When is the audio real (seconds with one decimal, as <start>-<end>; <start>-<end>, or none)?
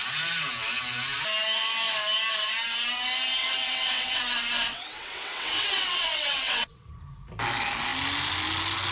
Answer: 0.0-3.4; 4.2-4.7; 6.9-8.9